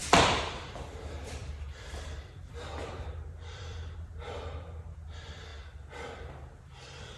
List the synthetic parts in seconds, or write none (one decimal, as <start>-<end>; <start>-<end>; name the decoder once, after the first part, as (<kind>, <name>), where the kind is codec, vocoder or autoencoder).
0.0-5.5 (vocoder, BigVGAN v2); 6.3-7.2